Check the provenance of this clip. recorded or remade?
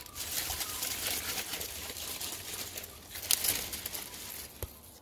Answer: recorded